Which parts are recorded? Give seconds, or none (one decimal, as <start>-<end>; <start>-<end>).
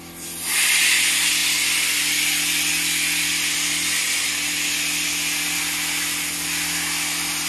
0.0-7.5